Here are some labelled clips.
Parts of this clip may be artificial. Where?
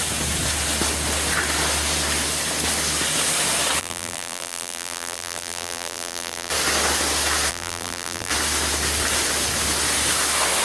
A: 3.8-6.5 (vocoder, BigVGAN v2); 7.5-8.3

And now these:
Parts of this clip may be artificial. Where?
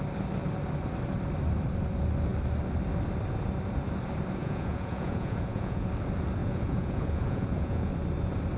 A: 4.4-5.9 (vocoder, Vocos); 6.4-7.9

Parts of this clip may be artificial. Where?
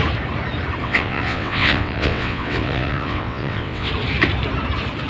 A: 0.8-3.9 (vocoder, WaveNeXt)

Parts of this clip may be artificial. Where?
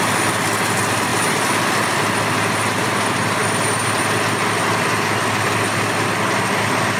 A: none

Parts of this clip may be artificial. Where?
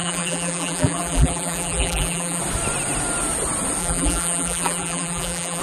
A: 0.0-2.4 (vocoder, BigVGAN v2); 3.8-5.6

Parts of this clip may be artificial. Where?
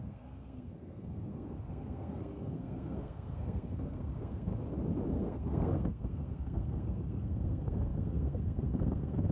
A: 0.0-4.5 (codec, SNAC); 5.1-9.3